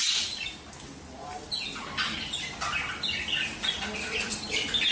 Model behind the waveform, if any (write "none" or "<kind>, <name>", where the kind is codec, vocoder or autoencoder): none